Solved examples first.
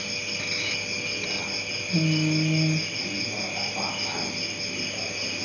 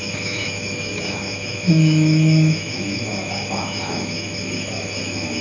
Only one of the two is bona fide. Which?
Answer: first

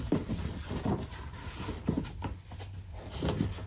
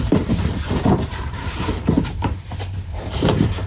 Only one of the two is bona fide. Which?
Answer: first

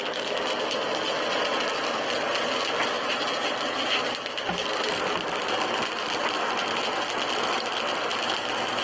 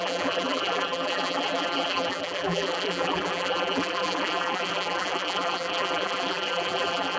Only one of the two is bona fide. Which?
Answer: first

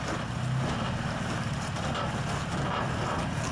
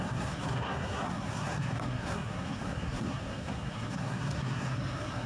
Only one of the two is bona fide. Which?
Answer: first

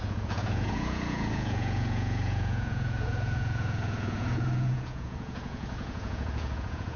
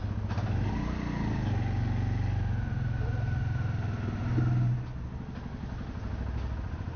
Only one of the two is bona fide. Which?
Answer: second